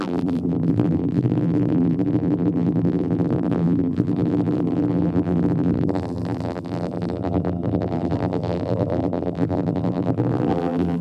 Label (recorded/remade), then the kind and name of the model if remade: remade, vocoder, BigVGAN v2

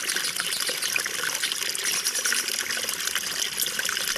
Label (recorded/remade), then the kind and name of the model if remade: recorded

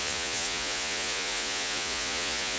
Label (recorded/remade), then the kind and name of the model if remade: remade, vocoder, Vocos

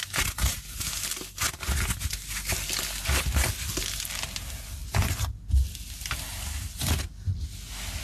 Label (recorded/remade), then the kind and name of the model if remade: recorded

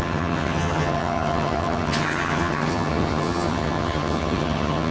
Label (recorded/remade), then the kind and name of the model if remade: remade, vocoder, HiFi-GAN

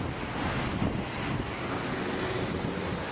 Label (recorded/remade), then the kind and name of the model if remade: recorded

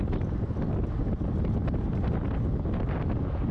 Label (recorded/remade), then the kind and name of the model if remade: recorded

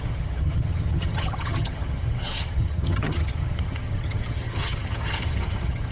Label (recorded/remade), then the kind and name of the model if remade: remade, vocoder, HiFi-GAN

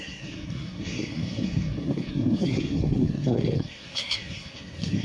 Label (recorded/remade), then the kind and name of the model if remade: remade, codec, SNAC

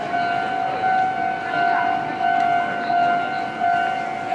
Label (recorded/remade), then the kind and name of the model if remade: recorded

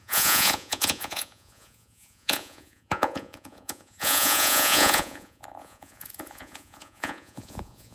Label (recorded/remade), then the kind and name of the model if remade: remade, vocoder, Vocos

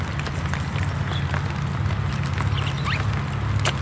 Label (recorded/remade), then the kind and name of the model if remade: recorded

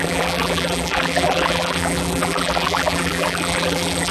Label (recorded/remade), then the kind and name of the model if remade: remade, vocoder, BigVGAN v2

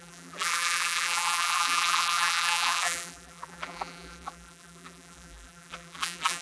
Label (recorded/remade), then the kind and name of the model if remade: remade, vocoder, BigVGAN v2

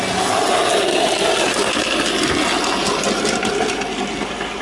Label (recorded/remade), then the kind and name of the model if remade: recorded